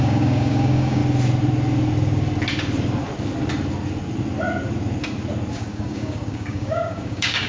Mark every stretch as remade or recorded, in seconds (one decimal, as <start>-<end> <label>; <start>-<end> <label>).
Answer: 0.0-1.0 remade; 1.0-5.5 recorded; 5.5-7.5 remade